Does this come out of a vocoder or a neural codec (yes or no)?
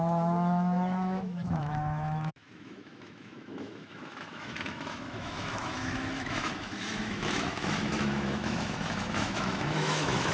yes